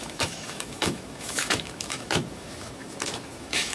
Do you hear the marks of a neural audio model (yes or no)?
yes